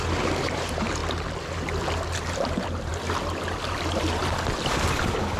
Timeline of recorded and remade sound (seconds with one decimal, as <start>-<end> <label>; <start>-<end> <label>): 0.0-1.0 remade; 1.0-2.3 recorded; 2.3-2.9 remade; 2.9-5.4 recorded